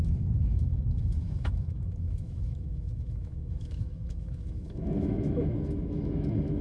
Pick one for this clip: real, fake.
fake